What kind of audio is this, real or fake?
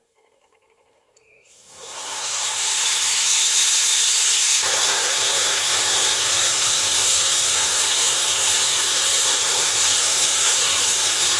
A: fake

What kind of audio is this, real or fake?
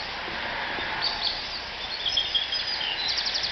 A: real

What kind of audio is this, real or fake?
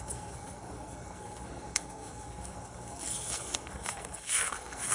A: fake